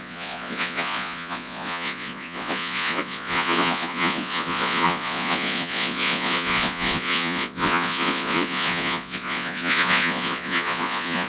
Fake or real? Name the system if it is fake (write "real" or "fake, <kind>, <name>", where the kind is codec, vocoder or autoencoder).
fake, vocoder, Vocos